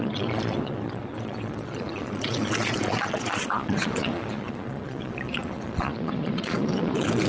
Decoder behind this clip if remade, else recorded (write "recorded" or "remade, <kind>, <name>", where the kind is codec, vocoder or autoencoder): remade, vocoder, Vocos